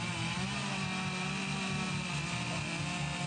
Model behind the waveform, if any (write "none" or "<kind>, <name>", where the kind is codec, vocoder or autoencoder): none